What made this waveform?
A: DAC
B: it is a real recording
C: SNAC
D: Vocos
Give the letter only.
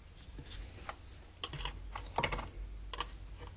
B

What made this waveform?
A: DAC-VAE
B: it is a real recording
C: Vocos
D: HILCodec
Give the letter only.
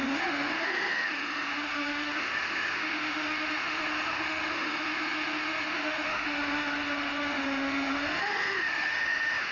A